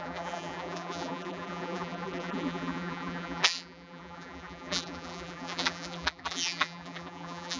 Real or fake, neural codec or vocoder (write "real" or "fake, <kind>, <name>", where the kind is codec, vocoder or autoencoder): fake, vocoder, BigVGAN v2